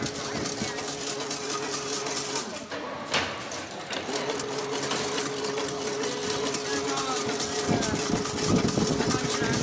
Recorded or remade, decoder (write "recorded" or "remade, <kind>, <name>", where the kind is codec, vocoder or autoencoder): recorded